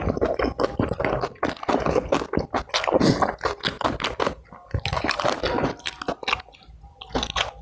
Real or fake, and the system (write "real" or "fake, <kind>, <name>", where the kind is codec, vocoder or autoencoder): real